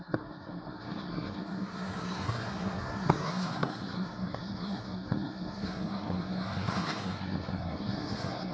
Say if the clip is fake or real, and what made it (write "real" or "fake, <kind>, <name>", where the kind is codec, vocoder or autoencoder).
fake, codec, SNAC